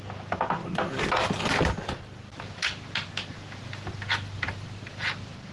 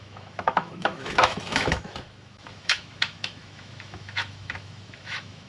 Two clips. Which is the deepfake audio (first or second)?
second